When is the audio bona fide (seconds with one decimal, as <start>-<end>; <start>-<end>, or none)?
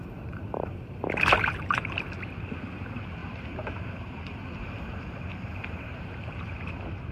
none